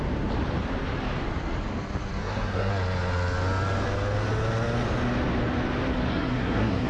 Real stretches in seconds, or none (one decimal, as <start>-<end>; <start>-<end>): 0.0-2.2; 2.7-6.1